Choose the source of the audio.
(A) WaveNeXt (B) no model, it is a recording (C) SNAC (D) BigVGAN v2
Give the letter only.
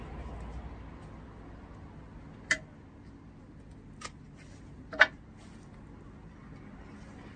B